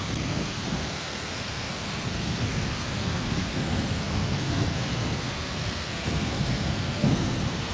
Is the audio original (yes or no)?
no